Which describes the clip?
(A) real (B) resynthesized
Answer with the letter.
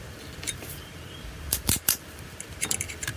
B